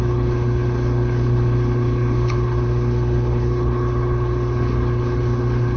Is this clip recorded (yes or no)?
no